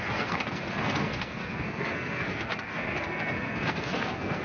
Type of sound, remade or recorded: remade